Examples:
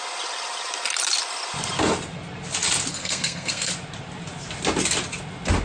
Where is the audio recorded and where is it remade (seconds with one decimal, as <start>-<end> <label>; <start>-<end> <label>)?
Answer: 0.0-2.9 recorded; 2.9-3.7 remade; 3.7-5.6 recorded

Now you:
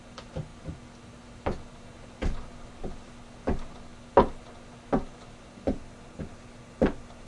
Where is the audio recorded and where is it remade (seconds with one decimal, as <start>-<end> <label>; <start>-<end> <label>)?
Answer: 0.0-7.3 recorded

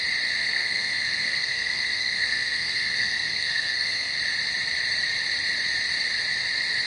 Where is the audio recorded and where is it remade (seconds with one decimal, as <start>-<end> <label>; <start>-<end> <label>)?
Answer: 0.0-0.4 recorded; 0.4-4.2 remade; 4.2-6.9 recorded